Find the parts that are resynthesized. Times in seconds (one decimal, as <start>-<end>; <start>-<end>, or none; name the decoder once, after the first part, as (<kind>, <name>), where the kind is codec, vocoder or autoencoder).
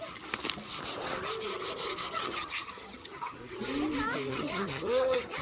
2.1-3.4 (vocoder, HiFi-GAN); 4.3-5.4